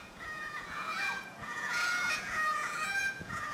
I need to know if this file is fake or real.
fake